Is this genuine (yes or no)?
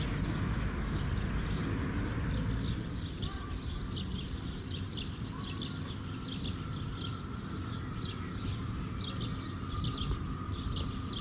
yes